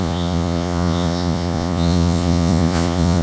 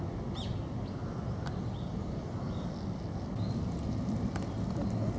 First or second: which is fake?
first